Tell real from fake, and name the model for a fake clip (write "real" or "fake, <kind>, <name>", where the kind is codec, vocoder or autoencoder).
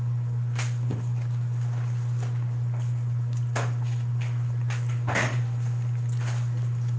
real